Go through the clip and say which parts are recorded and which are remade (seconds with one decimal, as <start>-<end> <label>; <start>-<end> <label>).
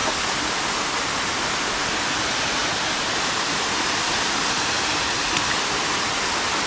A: 0.0-2.2 recorded; 2.2-2.6 remade; 2.6-6.7 recorded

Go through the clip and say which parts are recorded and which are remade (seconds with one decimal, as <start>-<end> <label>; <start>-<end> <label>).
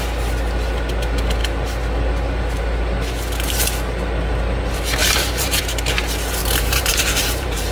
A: 0.0-5.0 recorded; 5.0-5.6 remade; 5.6-6.4 recorded; 6.4-7.7 remade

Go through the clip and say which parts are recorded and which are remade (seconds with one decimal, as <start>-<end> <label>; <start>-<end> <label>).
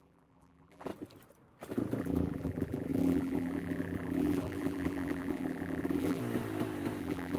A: 0.0-0.9 remade; 0.9-2.0 recorded; 2.0-6.2 remade; 6.2-7.0 recorded; 7.0-7.4 remade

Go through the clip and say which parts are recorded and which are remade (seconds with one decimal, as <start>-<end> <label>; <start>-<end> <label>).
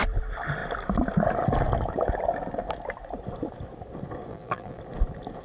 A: 0.0-4.3 recorded; 4.3-4.8 remade; 4.8-5.4 recorded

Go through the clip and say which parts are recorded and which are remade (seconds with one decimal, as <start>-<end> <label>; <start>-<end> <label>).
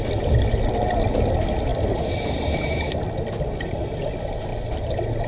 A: 0.0-5.3 recorded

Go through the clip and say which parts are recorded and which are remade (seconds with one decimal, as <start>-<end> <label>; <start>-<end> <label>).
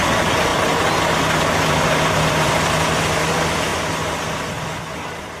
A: 0.0-0.5 remade; 0.5-1.7 recorded; 1.7-3.7 remade; 3.7-5.4 recorded